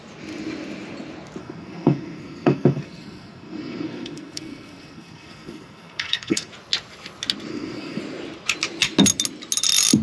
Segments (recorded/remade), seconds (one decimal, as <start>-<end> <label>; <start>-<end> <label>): 0.0-1.4 recorded; 1.4-6.5 remade; 6.5-7.5 recorded; 7.5-8.0 remade; 8.0-10.0 recorded